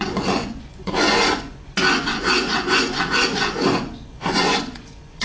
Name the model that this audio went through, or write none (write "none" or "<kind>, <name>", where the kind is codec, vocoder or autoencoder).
vocoder, Vocos